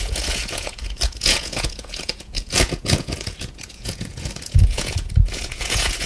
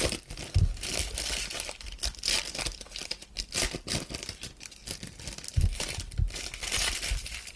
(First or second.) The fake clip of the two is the first